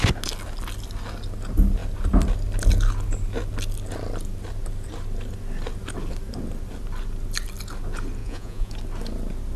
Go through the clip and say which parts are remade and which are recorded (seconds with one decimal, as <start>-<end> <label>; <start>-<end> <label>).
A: 0.0-8.2 recorded; 8.2-8.7 remade; 8.7-9.6 recorded

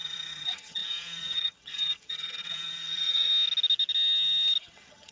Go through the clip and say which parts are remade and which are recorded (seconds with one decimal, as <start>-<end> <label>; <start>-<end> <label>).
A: 0.0-3.3 remade; 3.3-4.6 recorded; 4.6-5.1 remade

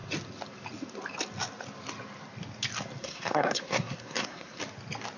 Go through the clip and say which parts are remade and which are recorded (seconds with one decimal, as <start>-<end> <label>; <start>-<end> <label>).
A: 0.0-3.0 recorded; 3.0-4.6 remade; 4.6-5.2 recorded

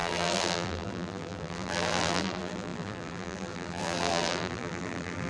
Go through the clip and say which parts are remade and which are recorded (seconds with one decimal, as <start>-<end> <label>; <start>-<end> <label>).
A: 0.0-5.3 remade

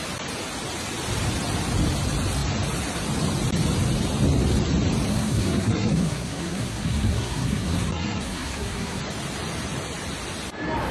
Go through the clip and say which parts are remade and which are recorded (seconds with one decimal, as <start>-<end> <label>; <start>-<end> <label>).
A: 0.0-5.1 recorded; 5.1-9.0 remade; 9.0-10.9 recorded